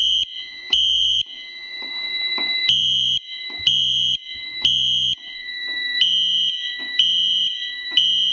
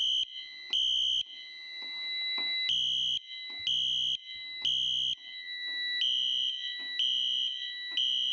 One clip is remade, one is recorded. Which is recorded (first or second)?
second